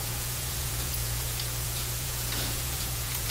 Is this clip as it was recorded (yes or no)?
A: no